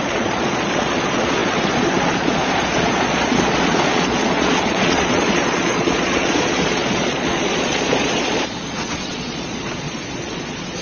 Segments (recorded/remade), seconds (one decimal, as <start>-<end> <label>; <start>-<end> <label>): 0.0-10.8 remade